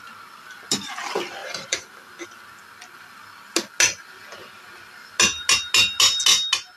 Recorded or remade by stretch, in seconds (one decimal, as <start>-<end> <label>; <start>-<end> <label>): 0.0-1.4 recorded; 1.4-2.1 remade; 2.1-6.8 recorded